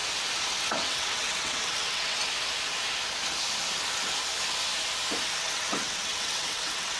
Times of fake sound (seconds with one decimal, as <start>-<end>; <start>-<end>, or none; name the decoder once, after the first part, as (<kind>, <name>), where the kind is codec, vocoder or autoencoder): 0.6-2.2 (vocoder, WaveNeXt); 5.4-7.0